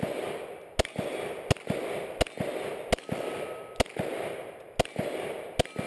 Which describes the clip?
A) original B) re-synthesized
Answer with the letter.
A